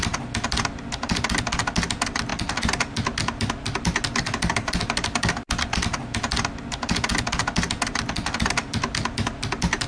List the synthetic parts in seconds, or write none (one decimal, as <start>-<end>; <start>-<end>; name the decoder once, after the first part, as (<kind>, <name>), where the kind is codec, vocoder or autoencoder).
none